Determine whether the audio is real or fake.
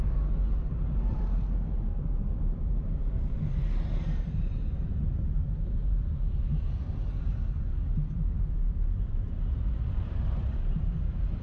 fake